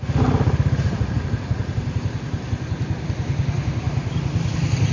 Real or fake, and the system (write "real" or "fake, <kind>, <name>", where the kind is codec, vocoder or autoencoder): real